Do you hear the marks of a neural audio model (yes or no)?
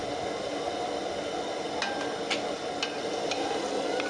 no